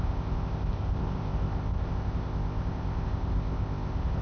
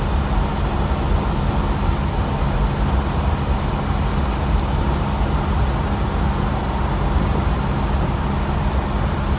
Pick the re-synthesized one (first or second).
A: first